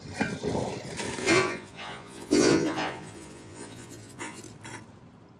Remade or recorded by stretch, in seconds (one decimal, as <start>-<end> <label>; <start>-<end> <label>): 0.0-1.2 recorded; 1.2-4.4 remade; 4.4-5.4 recorded